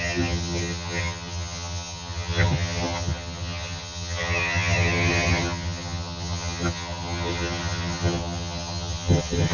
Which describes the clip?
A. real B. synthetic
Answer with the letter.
B